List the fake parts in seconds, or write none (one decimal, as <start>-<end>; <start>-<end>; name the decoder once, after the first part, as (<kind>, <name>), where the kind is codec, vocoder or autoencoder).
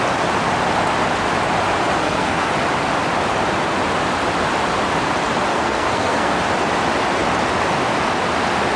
2.0-2.5 (codec, SNAC); 5.5-6.4